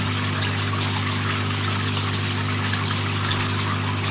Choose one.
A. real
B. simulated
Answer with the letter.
A